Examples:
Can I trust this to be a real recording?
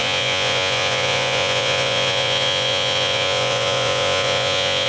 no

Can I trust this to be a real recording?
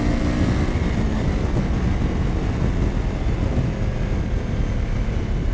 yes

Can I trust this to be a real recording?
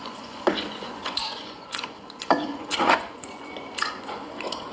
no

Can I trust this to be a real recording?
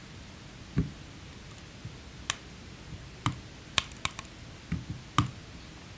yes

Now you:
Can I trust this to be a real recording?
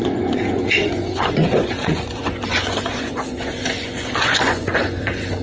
no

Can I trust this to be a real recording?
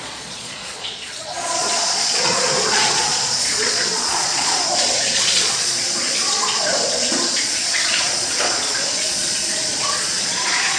no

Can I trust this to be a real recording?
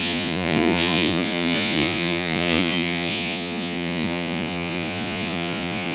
no